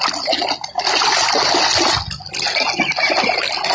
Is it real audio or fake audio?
real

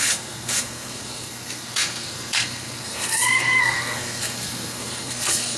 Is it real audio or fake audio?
fake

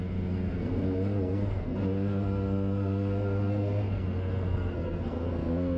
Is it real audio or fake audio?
fake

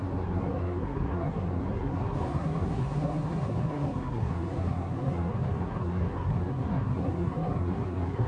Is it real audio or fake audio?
fake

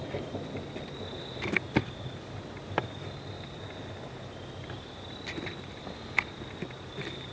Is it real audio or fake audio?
real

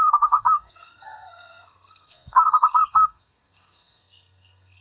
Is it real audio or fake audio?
fake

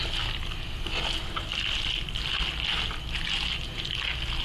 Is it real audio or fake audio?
real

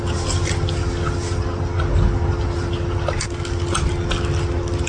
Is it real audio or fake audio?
real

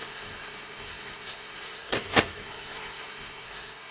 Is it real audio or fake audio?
fake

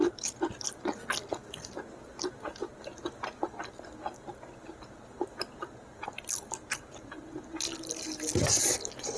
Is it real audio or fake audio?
real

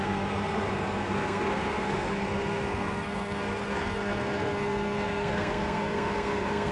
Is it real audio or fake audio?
fake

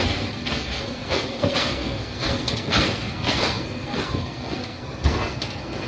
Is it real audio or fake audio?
fake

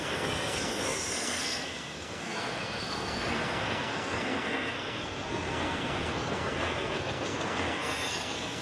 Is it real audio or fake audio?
fake